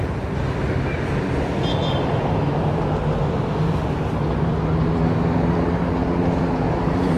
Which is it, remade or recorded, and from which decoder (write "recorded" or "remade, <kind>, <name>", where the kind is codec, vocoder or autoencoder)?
recorded